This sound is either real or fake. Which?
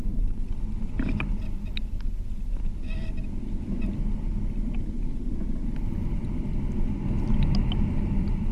real